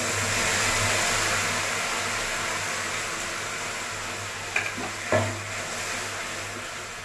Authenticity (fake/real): real